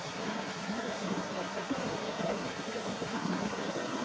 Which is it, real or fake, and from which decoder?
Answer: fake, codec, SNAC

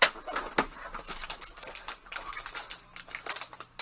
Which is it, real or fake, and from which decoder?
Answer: real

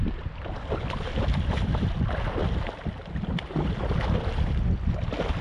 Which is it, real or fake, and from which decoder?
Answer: real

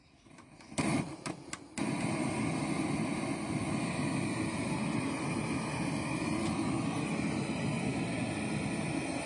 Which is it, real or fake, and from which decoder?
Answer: real